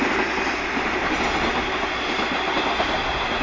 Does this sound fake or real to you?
real